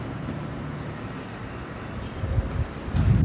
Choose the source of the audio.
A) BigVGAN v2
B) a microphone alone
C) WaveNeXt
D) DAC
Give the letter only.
B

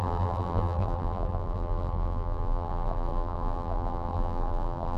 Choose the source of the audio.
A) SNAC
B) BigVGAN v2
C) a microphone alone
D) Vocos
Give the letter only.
B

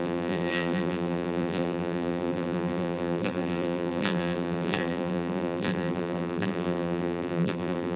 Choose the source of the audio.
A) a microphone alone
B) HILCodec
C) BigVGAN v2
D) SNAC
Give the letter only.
C